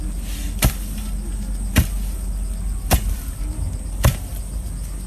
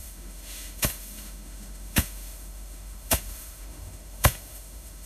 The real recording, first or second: first